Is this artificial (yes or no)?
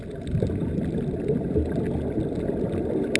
no